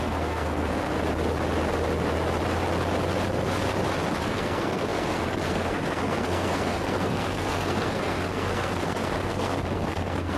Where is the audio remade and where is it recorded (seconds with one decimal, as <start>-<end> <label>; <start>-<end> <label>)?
0.0-0.9 remade; 0.9-4.2 recorded; 4.2-10.4 remade